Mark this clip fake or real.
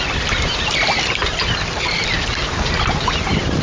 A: real